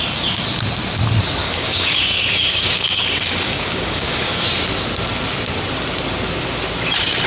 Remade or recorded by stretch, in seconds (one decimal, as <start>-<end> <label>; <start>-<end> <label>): 0.0-1.4 recorded; 1.4-4.4 remade; 4.4-7.3 recorded